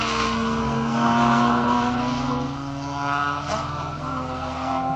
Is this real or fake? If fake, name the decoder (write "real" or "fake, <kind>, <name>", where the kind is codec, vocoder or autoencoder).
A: fake, codec, SNAC